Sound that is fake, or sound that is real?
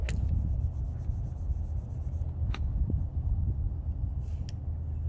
real